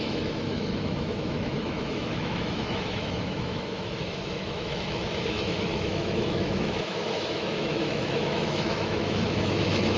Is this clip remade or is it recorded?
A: remade